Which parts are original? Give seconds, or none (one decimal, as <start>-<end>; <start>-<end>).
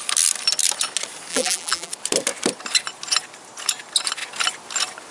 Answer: 0.0-1.3; 1.9-5.1